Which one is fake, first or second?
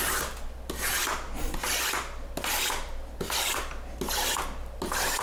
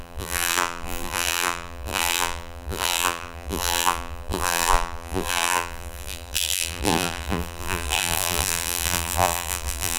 second